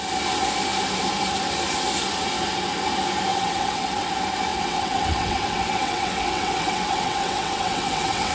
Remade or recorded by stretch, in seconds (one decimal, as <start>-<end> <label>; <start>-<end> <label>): 0.0-3.3 recorded; 3.3-4.1 remade; 4.1-4.5 recorded; 4.5-8.3 remade